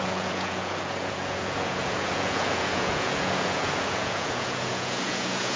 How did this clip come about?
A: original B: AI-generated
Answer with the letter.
B